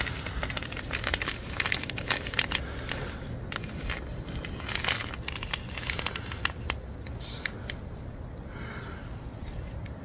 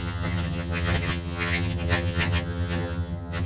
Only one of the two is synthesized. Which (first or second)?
second